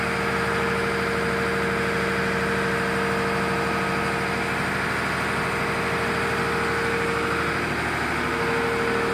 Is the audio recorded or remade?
recorded